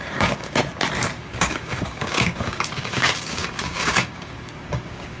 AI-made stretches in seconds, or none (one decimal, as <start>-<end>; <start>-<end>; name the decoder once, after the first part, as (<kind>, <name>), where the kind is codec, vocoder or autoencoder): 0.0-0.6 (codec, DAC); 1.2-5.2